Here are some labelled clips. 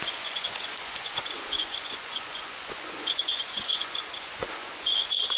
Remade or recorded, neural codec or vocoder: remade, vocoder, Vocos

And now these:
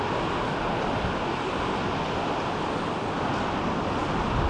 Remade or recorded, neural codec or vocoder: recorded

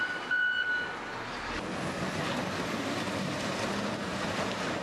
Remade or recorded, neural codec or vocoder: recorded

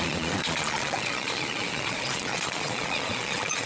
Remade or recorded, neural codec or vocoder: remade, vocoder, Vocos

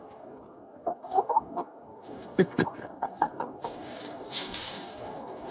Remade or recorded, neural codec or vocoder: remade, codec, DAC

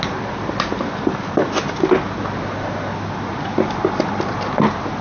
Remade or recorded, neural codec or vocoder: recorded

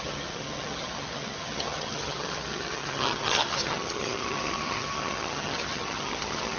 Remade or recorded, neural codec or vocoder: remade, vocoder, HiFi-GAN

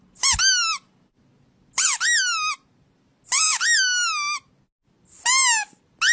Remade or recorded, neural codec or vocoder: recorded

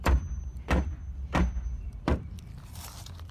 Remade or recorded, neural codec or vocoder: remade, vocoder, BigVGAN v2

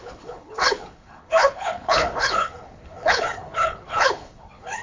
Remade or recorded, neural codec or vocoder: remade, codec, HILCodec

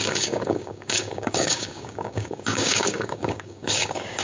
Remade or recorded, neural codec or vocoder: remade, codec, DAC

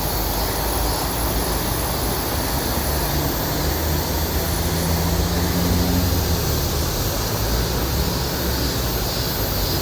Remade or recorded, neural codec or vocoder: recorded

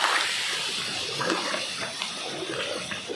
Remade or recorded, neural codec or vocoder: recorded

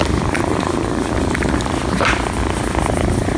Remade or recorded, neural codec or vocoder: remade, vocoder, BigVGAN v2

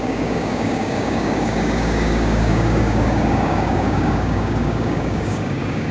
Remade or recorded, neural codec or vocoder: remade, codec, DAC